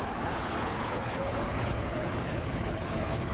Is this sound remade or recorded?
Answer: remade